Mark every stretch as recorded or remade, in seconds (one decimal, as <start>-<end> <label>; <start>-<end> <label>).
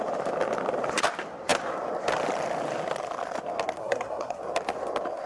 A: 0.0-3.8 recorded; 3.8-4.4 remade; 4.4-5.3 recorded